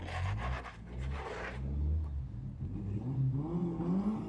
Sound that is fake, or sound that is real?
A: real